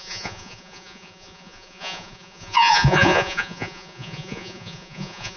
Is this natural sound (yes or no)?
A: no